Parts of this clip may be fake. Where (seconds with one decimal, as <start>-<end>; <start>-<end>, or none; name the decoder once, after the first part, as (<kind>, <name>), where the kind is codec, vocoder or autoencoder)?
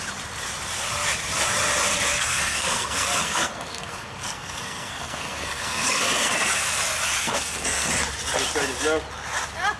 2.1-6.8 (codec, SNAC); 7.2-7.9